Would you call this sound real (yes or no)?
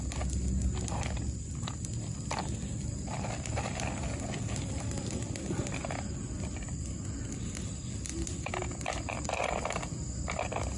yes